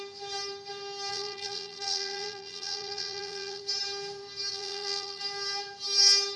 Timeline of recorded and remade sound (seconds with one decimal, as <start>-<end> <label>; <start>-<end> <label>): 0.0-1.1 recorded; 1.1-3.6 remade; 3.6-4.5 recorded; 4.5-5.2 remade; 5.2-6.4 recorded